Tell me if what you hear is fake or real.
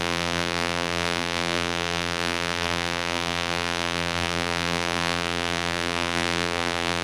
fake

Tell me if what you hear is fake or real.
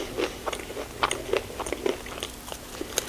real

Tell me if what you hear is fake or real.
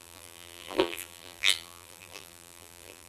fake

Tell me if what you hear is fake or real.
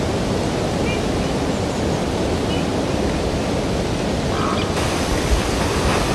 real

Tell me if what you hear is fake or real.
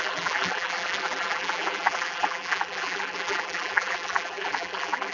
fake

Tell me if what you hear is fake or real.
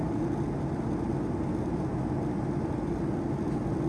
real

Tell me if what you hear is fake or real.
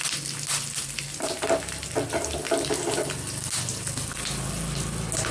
real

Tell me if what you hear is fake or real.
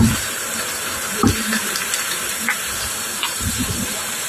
fake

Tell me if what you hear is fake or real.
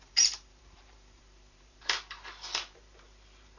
fake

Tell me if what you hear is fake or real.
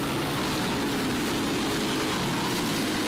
real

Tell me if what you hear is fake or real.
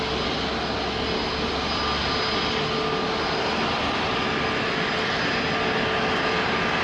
real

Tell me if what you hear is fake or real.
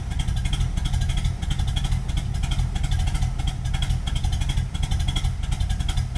real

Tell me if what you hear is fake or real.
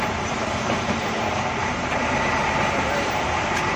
fake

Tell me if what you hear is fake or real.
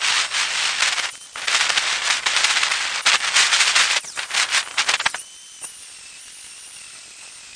real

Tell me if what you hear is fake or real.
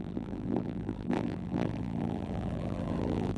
fake